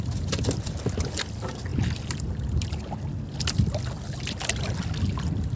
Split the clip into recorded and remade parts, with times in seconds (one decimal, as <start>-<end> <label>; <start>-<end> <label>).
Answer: 0.0-5.6 recorded